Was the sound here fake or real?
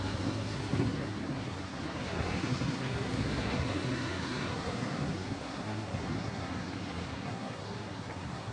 fake